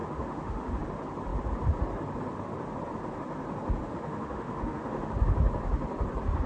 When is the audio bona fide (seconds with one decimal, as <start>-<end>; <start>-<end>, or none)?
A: 0.8-3.9; 5.1-6.5